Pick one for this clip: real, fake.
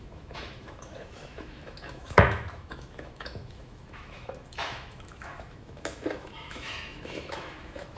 fake